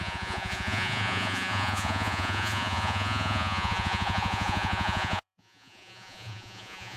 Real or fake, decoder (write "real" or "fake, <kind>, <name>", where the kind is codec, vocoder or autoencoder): fake, vocoder, Vocos